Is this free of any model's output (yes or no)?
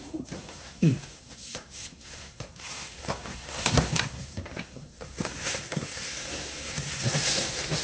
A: no